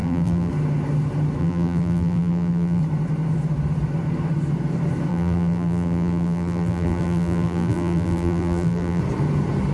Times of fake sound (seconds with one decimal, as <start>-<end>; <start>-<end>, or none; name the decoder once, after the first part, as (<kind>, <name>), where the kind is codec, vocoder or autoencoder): 0.0-0.5 (vocoder, BigVGAN v2); 1.4-2.8; 5.1-9.0